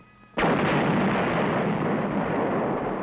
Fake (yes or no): no